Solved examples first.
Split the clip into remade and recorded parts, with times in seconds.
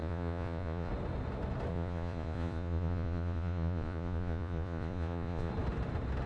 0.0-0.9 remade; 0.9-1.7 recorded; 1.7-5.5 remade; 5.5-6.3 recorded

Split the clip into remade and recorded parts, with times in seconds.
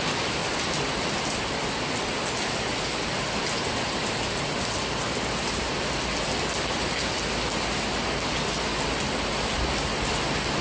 0.0-10.6 recorded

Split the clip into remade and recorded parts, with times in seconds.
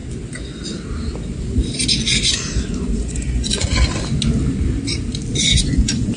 0.0-3.0 recorded; 3.0-3.7 remade; 3.7-5.4 recorded; 5.4-6.2 remade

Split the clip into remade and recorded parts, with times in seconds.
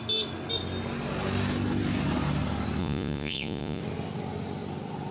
0.0-2.8 recorded; 2.8-3.8 remade; 3.8-5.1 recorded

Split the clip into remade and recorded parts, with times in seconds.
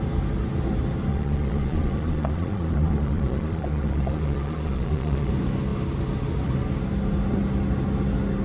0.0-1.1 recorded; 1.1-5.3 remade; 5.3-8.4 recorded